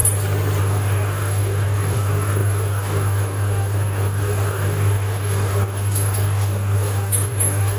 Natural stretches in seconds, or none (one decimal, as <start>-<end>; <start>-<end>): 0.0-0.6